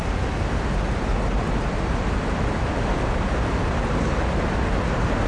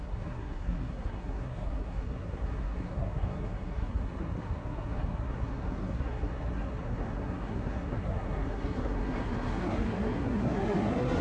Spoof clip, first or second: second